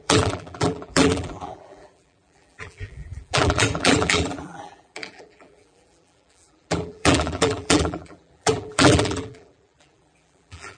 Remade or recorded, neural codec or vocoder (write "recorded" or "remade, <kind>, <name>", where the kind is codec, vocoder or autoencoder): remade, vocoder, BigVGAN v2